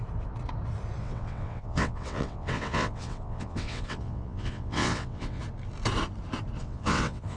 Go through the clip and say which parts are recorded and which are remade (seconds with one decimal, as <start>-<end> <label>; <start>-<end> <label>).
0.0-1.0 recorded; 1.0-5.4 remade; 5.4-6.6 recorded; 6.6-7.4 remade